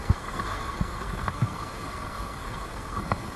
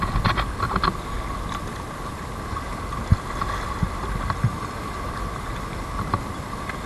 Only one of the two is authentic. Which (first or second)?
second